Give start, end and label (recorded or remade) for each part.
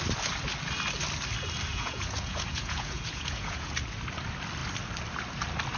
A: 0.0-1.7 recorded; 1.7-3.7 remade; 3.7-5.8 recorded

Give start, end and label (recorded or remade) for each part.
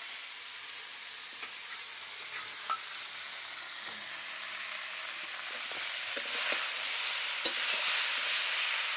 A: 0.0-9.0 recorded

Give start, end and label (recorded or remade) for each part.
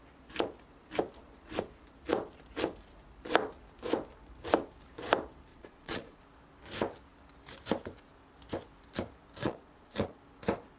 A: 0.0-5.5 recorded; 5.5-6.2 remade; 6.2-9.4 recorded; 9.4-10.2 remade; 10.2-10.8 recorded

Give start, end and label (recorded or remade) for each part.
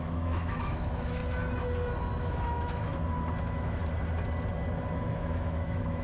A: 0.0-1.2 remade; 1.2-2.2 recorded; 2.2-2.9 remade; 2.9-3.4 recorded; 3.4-3.8 remade; 3.8-5.1 recorded; 5.1-6.0 remade